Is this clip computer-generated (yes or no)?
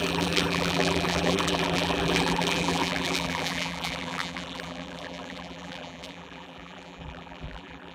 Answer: yes